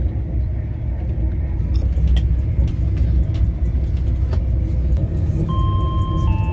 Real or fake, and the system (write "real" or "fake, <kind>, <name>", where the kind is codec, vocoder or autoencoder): real